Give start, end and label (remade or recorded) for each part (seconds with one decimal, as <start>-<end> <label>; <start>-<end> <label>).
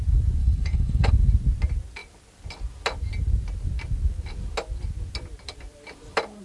0.0-0.4 recorded; 0.4-1.1 remade; 1.1-6.4 recorded